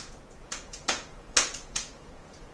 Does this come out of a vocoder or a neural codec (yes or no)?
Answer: yes